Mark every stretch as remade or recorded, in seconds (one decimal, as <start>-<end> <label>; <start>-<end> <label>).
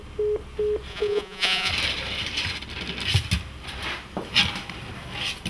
0.0-0.9 recorded; 0.9-1.7 remade; 1.7-5.5 recorded